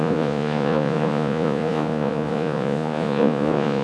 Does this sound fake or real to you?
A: fake